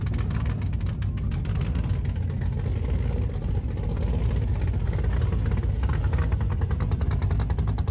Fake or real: real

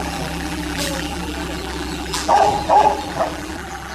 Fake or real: fake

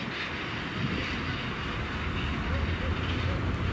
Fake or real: real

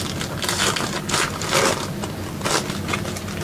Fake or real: real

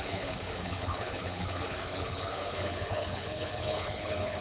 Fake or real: fake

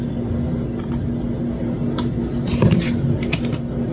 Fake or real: real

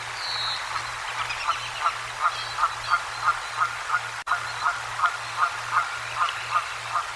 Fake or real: real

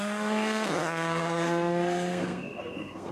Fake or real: fake